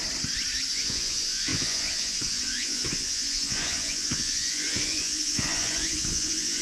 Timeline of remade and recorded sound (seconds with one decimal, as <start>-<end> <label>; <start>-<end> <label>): 0.0-0.7 recorded; 0.7-6.6 remade